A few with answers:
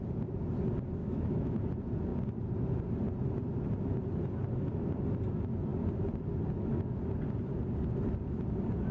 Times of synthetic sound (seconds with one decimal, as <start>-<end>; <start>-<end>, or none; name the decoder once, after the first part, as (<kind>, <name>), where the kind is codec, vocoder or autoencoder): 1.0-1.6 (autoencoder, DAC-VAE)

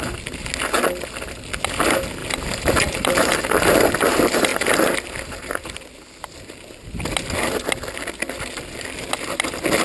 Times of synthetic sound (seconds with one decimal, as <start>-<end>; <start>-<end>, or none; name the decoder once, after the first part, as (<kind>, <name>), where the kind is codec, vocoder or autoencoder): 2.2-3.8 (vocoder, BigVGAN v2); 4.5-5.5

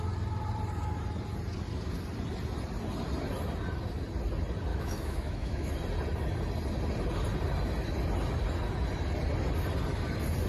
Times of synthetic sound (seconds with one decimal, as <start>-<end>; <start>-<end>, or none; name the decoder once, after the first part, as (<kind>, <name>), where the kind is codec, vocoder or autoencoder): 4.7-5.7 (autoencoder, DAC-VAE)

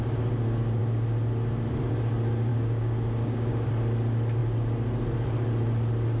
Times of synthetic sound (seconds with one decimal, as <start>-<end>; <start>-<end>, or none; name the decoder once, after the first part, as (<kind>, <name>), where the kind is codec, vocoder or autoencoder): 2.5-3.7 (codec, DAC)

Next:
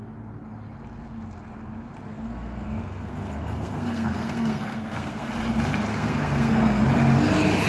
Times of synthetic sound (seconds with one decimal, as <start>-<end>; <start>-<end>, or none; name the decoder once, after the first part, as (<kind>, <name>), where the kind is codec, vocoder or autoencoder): 2.1-5.3 (codec, SNAC); 5.9-6.8

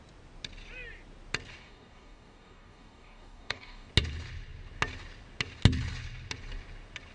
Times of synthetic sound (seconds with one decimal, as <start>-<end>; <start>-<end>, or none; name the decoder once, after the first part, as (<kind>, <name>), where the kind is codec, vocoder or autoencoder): 1.6-3.9 (codec, DAC)